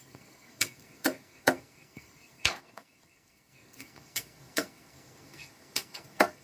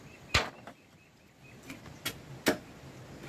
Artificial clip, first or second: first